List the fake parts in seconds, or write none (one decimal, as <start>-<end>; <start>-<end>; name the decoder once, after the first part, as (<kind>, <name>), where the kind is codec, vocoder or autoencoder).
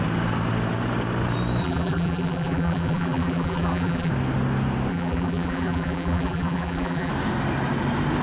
1.6-4.1 (vocoder, BigVGAN v2); 4.9-7.1